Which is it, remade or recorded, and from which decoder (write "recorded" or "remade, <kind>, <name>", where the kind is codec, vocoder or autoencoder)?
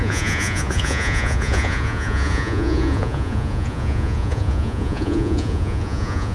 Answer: remade, vocoder, Vocos